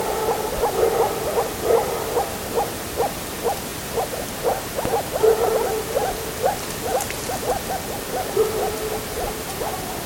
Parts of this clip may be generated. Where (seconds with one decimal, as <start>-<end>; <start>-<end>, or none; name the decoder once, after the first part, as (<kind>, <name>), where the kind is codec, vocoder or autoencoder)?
none